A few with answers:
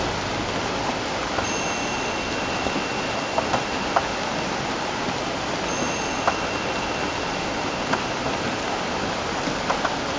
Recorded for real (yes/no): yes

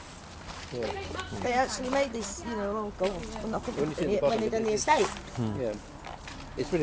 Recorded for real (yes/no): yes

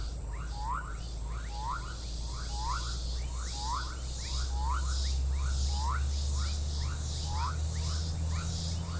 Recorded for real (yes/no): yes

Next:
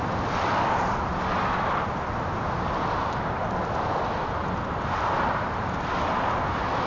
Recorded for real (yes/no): yes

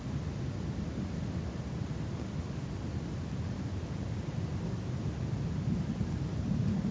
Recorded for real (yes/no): yes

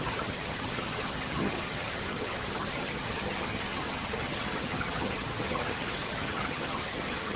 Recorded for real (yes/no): no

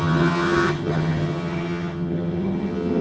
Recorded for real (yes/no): no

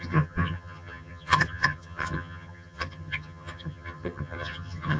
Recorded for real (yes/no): no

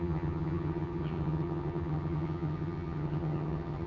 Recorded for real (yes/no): no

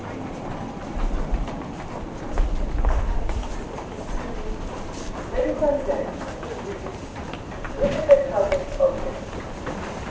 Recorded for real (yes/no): yes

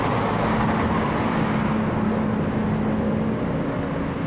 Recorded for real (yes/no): yes